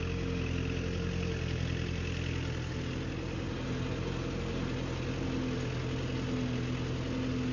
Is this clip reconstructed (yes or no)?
no